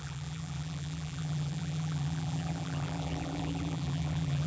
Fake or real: fake